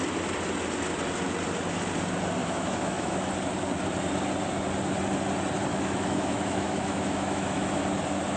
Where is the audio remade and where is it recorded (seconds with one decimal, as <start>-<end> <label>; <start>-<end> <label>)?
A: 0.0-2.4 recorded; 2.4-3.3 remade; 3.3-5.7 recorded; 5.7-7.7 remade; 7.7-8.4 recorded